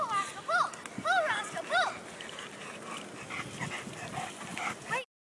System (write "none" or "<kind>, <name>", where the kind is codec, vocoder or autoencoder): none